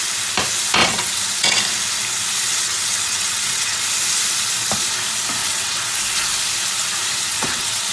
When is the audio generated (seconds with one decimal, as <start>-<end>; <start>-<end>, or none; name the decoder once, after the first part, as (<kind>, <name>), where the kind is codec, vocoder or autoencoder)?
0.8-1.6 (vocoder, WaveNeXt); 2.5-3.8; 5.4-6.0; 7.3-7.9